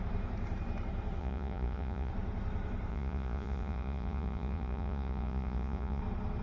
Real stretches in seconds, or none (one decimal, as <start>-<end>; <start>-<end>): 0.0-1.2; 2.1-2.9; 6.0-6.4